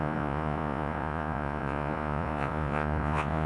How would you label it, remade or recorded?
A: remade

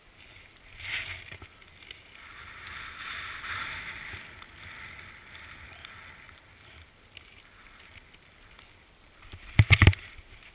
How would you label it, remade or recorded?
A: recorded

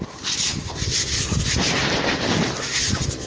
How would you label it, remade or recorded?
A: recorded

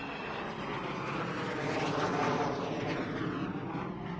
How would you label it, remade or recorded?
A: recorded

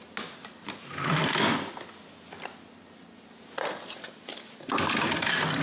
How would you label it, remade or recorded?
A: recorded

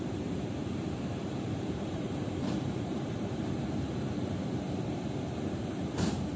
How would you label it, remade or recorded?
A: remade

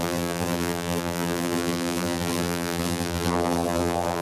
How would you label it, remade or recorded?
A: remade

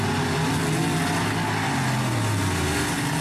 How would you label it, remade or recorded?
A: recorded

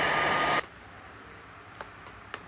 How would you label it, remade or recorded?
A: remade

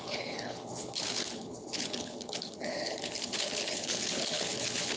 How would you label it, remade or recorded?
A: remade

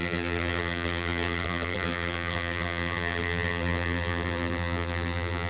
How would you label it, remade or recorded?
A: remade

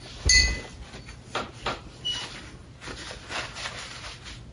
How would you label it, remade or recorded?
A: recorded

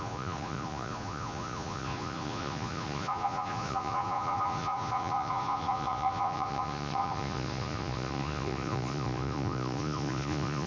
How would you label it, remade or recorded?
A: remade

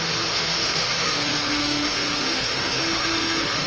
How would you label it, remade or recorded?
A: remade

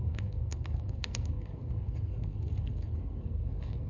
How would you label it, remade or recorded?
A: remade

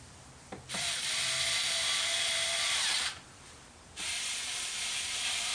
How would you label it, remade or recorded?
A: remade